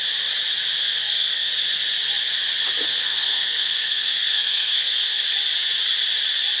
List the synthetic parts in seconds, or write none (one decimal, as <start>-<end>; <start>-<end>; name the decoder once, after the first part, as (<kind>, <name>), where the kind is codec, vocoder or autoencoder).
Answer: 0.8-1.5 (codec, SNAC); 2.9-5.2